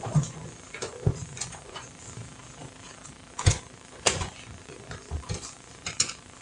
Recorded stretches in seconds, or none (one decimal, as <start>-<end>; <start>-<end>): 2.2-3.3